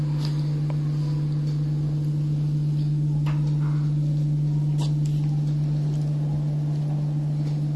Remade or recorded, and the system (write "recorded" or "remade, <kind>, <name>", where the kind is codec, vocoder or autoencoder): recorded